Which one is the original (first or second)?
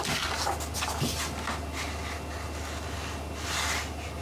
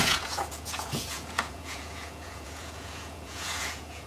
first